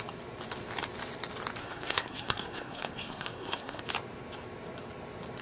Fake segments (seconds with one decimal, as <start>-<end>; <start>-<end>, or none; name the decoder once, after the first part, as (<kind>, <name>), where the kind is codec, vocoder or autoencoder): 1.6-3.8 (codec, SNAC)